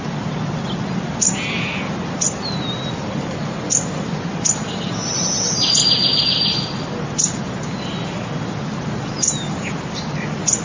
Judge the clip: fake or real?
real